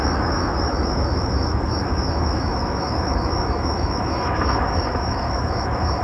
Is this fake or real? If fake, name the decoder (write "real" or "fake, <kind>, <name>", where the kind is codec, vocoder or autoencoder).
fake, autoencoder, DAC-VAE